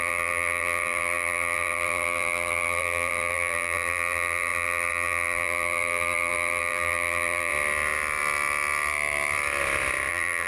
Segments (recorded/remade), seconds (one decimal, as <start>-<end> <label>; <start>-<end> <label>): 0.0-7.5 remade; 7.5-10.1 recorded; 10.1-10.5 remade